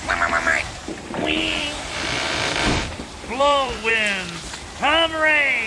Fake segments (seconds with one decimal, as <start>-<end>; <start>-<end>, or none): 0.5-3.9